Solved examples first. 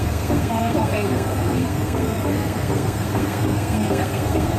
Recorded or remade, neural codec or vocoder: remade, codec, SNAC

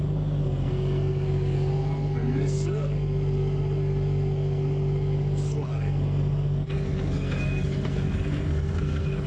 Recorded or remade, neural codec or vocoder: remade, codec, SNAC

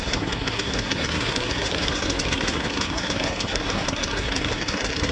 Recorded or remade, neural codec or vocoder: remade, codec, SNAC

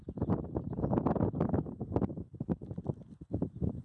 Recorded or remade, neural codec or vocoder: recorded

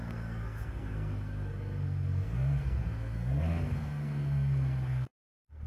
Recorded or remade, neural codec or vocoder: remade, codec, SNAC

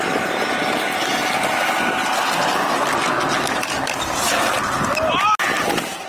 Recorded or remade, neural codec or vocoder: recorded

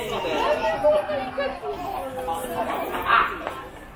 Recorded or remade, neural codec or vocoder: recorded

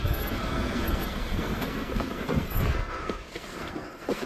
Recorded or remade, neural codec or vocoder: remade, codec, SNAC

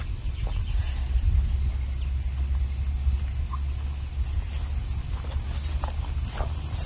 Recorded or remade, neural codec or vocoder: recorded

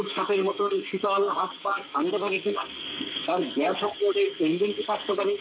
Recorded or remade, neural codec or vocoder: remade, codec, SNAC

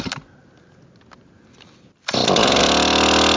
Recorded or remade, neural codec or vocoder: recorded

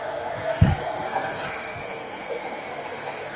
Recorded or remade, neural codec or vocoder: remade, codec, SNAC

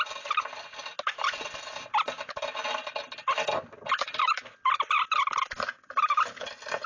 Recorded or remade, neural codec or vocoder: recorded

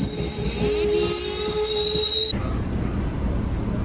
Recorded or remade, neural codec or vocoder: recorded